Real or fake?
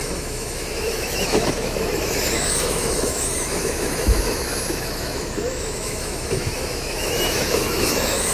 fake